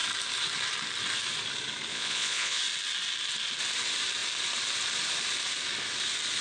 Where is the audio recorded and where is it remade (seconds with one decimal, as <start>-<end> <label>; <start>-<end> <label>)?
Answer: 0.0-1.9 recorded; 1.9-2.6 remade; 2.6-6.4 recorded